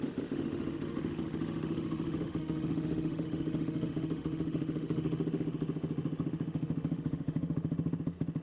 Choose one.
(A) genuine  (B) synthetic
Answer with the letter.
B